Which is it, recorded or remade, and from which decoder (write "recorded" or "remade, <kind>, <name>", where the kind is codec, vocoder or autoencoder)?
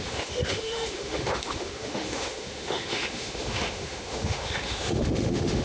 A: remade, autoencoder, DAC-VAE